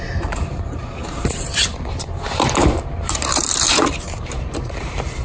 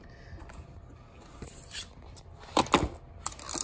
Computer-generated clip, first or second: first